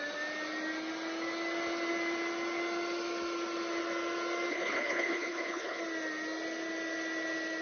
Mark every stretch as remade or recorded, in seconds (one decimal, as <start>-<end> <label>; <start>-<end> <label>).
0.0-4.5 recorded; 4.5-5.8 remade; 5.8-7.6 recorded